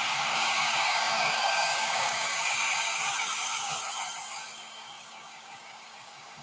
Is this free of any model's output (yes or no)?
no